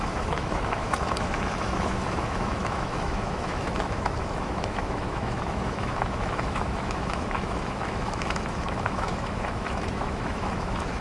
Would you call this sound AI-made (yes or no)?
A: yes